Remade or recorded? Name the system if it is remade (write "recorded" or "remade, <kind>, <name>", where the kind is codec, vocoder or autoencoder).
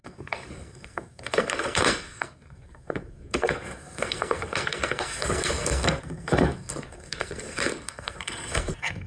remade, codec, SNAC